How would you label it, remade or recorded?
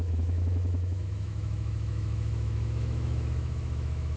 remade